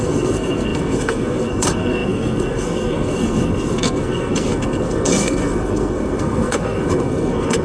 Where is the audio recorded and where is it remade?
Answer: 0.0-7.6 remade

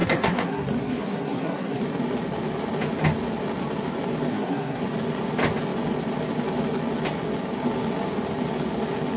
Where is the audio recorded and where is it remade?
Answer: 0.0-1.8 remade; 1.8-4.3 recorded; 4.3-4.8 remade; 4.8-9.2 recorded

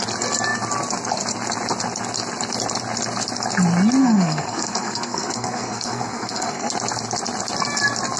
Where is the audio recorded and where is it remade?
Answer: 0.0-4.0 recorded; 4.0-6.7 remade; 6.7-8.2 recorded

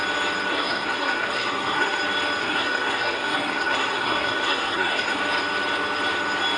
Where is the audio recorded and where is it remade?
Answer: 0.0-0.5 recorded; 0.5-2.0 remade; 2.0-2.4 recorded; 2.4-5.2 remade; 5.2-6.6 recorded

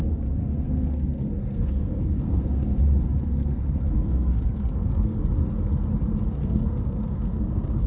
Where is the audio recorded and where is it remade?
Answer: 0.0-0.4 recorded; 0.4-2.8 remade; 2.8-3.3 recorded; 3.3-5.2 remade; 5.2-6.4 recorded; 6.4-7.9 remade

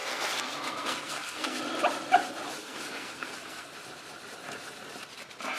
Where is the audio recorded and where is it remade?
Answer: 0.0-1.6 remade; 1.6-2.6 recorded; 2.6-3.7 remade; 3.7-5.6 recorded

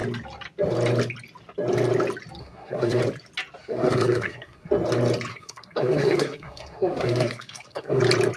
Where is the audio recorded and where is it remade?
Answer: 0.0-2.4 recorded; 2.4-3.0 remade; 3.0-3.6 recorded; 3.6-4.7 remade; 4.7-5.3 recorded; 5.3-8.0 remade; 8.0-8.4 recorded

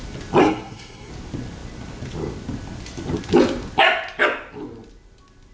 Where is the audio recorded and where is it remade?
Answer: 0.0-0.4 recorded; 0.4-1.1 remade; 1.1-5.5 recorded